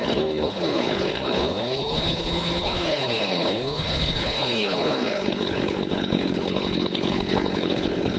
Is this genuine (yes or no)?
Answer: no